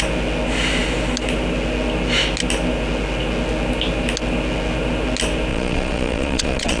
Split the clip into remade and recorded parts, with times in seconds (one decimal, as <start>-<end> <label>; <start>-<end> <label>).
0.0-5.5 recorded; 5.5-6.8 remade